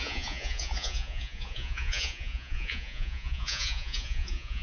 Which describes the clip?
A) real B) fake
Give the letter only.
B